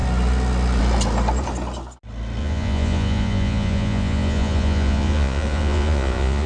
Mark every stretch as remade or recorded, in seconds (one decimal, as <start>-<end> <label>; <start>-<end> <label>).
0.0-2.4 recorded; 2.4-6.5 remade